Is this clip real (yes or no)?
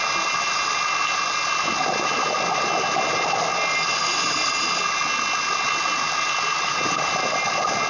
yes